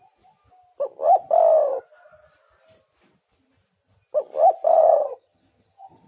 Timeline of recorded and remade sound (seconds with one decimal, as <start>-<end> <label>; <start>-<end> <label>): 0.0-4.7 recorded; 4.7-6.1 remade